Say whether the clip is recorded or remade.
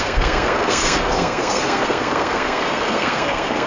remade